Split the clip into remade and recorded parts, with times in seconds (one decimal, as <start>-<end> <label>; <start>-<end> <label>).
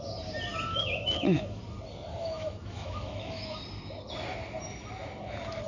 0.0-0.7 recorded; 0.7-1.6 remade; 1.6-2.2 recorded; 2.2-3.6 remade; 3.6-5.7 recorded